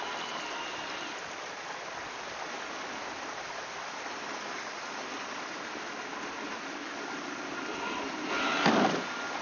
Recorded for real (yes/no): yes